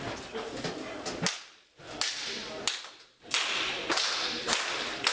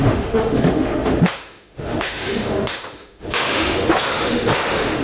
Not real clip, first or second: second